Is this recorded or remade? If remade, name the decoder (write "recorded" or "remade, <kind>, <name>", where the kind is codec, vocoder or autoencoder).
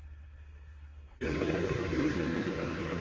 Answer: remade, codec, SNAC